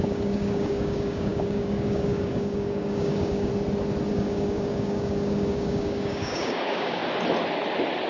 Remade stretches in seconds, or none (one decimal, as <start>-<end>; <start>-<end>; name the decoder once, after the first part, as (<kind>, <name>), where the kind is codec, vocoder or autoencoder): 0.0-3.5 (codec, DAC); 4.1-7.0